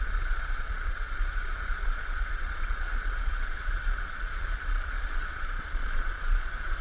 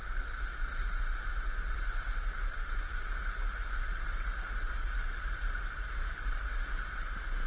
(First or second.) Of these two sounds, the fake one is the first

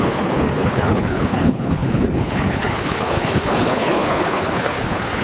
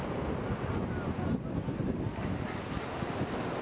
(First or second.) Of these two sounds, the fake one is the first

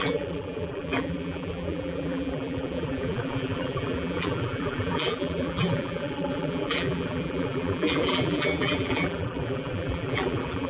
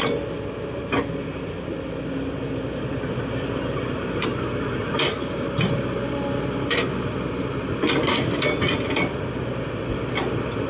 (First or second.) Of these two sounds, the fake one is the first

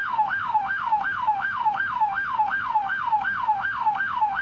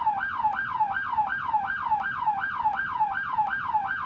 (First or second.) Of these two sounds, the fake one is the first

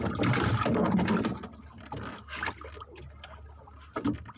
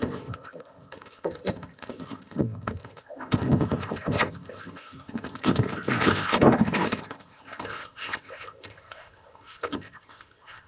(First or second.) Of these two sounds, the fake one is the second